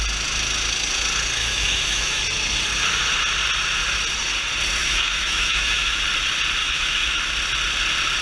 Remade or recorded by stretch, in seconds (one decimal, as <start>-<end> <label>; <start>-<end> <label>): 0.0-1.4 recorded; 1.4-2.2 remade; 2.2-4.8 recorded; 4.8-6.0 remade; 6.0-6.6 recorded; 6.6-7.2 remade; 7.2-8.2 recorded